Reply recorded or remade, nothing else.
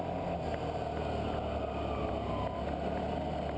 recorded